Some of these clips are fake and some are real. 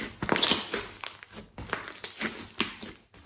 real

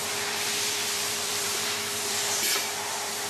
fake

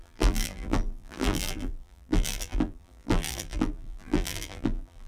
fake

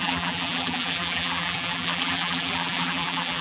fake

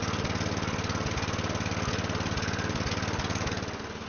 real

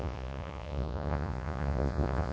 fake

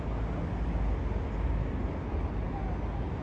real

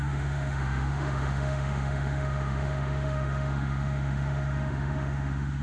fake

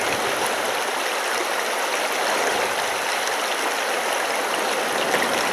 real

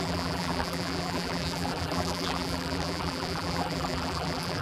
fake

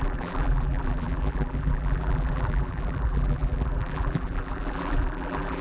fake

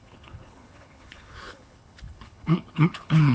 fake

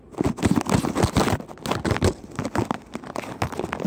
real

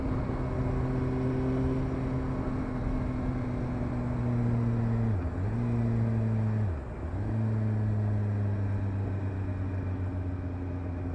real